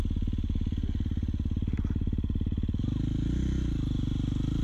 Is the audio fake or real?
real